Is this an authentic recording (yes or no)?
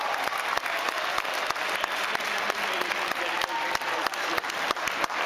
yes